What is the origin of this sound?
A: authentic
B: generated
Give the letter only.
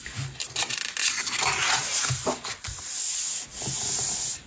A